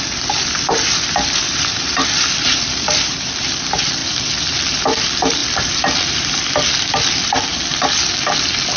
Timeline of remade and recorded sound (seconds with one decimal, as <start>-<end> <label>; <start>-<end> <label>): 0.0-4.0 remade; 4.0-4.8 recorded; 4.8-7.5 remade; 7.5-8.8 recorded